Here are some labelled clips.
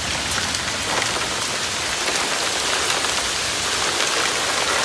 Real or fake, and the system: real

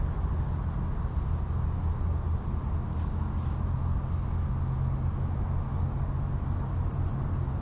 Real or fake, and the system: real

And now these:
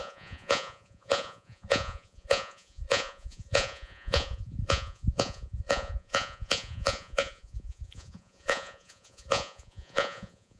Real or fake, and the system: fake, vocoder, Vocos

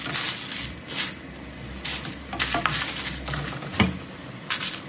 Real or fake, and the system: real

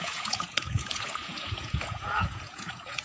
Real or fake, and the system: fake, vocoder, Vocos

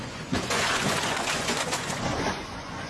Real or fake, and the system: fake, vocoder, Vocos